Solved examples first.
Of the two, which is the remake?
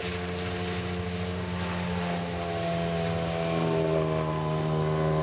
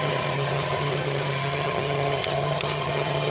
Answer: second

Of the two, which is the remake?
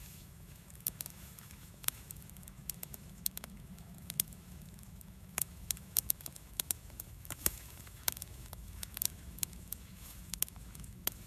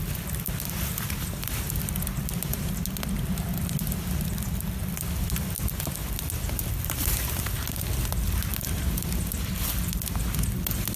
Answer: first